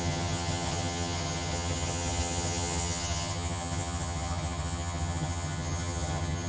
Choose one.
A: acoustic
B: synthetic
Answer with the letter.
B